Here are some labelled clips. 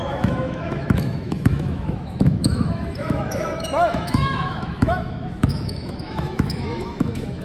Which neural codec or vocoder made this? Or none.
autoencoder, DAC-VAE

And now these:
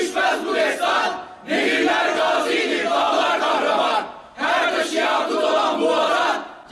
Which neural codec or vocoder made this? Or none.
none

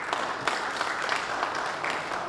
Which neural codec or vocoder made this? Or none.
none